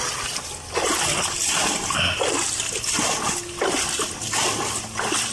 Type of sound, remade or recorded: recorded